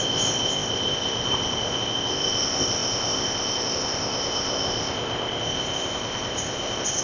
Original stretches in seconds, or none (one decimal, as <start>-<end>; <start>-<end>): none